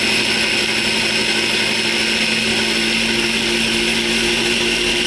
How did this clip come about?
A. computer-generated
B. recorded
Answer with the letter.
B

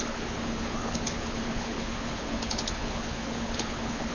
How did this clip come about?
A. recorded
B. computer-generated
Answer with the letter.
B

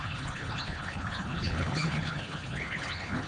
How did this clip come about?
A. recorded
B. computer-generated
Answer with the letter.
B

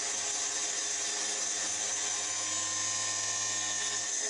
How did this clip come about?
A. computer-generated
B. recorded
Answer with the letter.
B